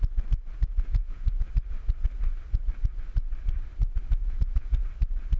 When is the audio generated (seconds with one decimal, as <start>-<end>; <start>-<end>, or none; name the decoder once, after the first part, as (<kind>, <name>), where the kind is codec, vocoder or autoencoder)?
0.7-1.4 (vocoder, Vocos); 4.2-4.8